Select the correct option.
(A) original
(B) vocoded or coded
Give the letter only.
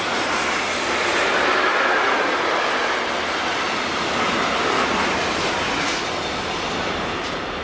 A